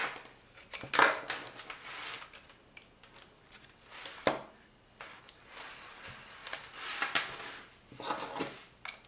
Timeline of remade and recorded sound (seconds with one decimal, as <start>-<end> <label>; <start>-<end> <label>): 0.0-9.1 recorded